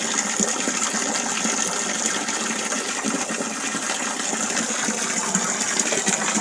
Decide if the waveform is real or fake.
real